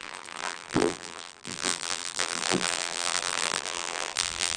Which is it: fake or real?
fake